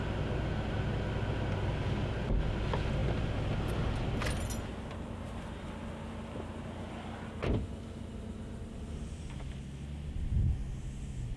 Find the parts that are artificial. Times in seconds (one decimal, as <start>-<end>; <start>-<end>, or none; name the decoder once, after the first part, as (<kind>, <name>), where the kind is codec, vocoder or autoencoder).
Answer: none